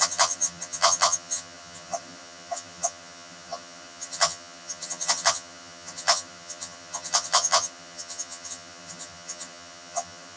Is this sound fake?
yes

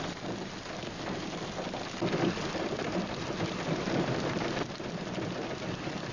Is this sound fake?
no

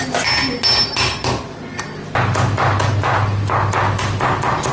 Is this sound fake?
no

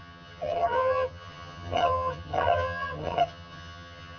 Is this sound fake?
yes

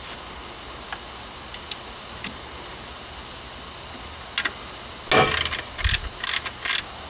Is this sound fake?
no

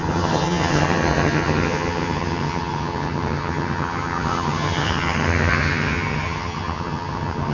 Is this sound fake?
yes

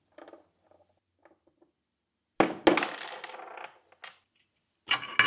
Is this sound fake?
no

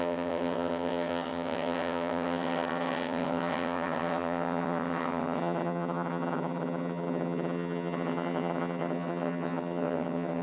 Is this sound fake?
yes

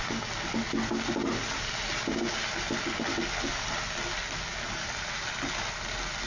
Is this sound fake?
no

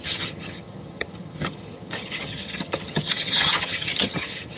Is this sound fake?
yes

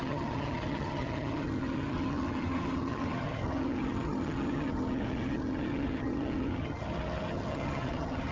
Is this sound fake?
yes